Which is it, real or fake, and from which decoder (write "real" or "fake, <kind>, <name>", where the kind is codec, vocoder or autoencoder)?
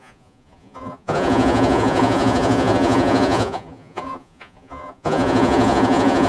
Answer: fake, vocoder, Vocos